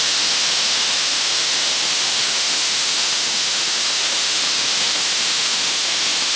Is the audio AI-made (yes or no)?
yes